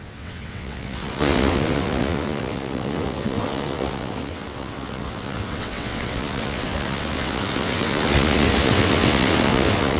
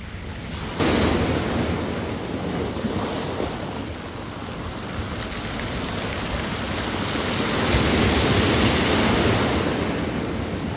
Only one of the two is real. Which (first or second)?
second